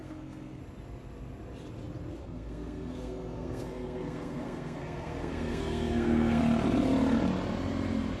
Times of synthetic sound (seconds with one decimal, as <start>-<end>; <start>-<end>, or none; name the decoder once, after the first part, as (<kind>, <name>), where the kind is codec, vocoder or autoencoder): 0.0-0.6 (codec, SNAC); 2.2-6.4